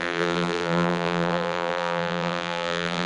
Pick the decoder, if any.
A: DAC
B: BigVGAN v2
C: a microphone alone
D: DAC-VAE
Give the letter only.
B